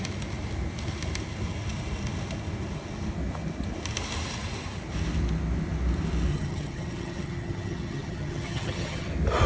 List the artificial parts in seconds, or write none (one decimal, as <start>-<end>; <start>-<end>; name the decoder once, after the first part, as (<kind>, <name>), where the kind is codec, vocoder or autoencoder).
6.3-9.1 (vocoder, HiFi-GAN)